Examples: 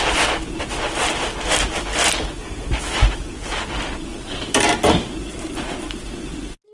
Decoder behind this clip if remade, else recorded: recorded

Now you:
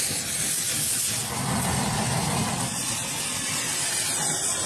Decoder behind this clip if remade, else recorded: recorded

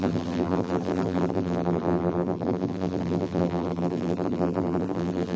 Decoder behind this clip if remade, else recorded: remade, vocoder, BigVGAN v2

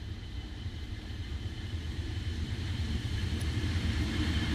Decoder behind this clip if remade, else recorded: remade, vocoder, BigVGAN v2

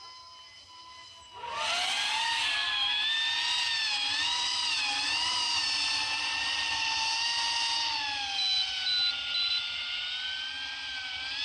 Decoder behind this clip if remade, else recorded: recorded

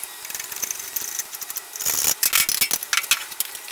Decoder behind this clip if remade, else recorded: recorded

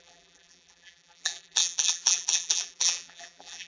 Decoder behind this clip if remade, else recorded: remade, vocoder, BigVGAN v2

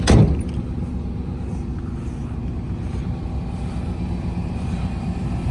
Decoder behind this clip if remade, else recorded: recorded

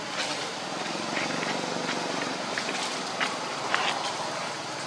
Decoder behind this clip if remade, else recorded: recorded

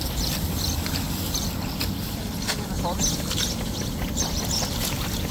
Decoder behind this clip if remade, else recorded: remade, vocoder, BigVGAN v2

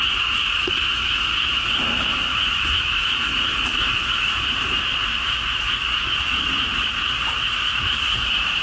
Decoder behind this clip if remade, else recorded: remade, vocoder, BigVGAN v2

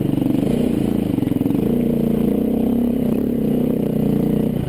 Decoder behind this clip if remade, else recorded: remade, vocoder, BigVGAN v2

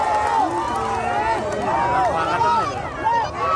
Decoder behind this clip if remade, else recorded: recorded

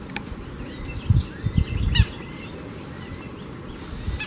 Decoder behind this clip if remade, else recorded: recorded